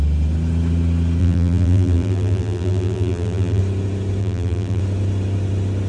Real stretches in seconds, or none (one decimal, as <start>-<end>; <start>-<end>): 0.0-1.2; 3.6-4.2; 4.8-5.9